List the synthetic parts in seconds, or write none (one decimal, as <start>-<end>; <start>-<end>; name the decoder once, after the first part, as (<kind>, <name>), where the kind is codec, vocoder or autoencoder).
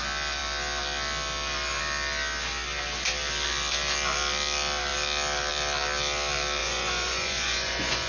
6.6-8.1 (vocoder, Vocos)